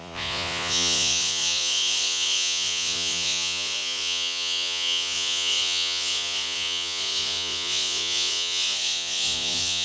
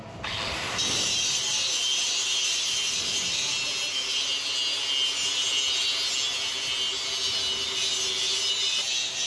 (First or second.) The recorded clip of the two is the second